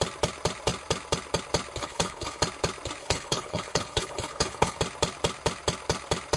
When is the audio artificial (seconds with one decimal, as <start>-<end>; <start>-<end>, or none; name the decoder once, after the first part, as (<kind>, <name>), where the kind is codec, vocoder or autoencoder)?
1.8-2.4 (codec, HILCodec); 3.0-4.8